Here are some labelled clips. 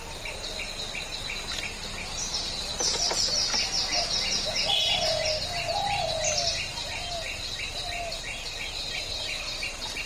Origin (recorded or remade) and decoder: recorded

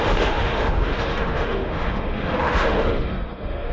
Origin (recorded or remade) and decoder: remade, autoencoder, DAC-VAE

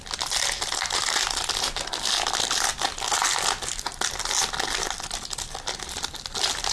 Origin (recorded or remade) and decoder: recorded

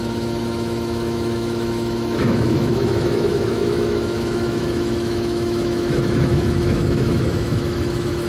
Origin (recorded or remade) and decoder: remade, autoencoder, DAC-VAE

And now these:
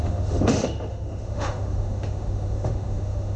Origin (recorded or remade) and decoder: remade, autoencoder, DAC-VAE